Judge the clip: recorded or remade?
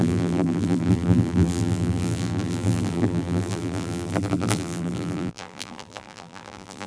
remade